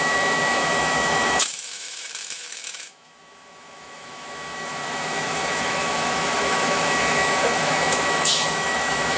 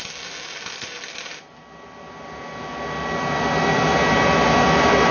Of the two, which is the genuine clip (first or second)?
second